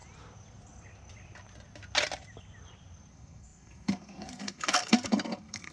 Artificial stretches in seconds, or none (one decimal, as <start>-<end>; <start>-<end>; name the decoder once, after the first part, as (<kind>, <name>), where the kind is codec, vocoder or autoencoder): 3.1-5.7 (codec, SNAC)

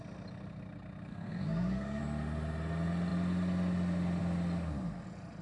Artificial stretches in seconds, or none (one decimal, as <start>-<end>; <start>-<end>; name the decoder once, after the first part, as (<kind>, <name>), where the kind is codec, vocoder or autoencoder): 1.1-2.0 (codec, SNAC)

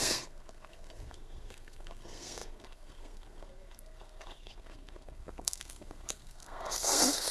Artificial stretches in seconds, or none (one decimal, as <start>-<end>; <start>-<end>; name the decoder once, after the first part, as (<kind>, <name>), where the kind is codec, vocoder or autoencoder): 0.0-7.3 (codec, SNAC)

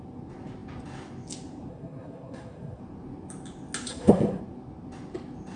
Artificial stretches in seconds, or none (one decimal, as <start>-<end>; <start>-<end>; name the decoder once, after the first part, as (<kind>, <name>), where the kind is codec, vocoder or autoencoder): 1.7-2.8 (codec, SNAC); 3.9-4.4

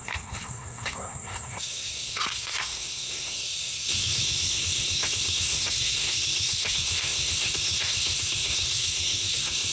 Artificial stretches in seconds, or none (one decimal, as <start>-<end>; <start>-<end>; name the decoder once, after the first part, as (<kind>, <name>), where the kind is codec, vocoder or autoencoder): 0.0-9.7 (codec, SNAC)

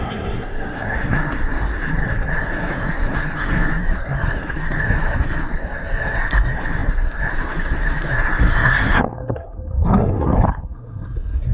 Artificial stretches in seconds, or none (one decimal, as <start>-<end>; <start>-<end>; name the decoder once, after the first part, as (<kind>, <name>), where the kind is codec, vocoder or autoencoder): 0.0-11.5 (codec, SNAC)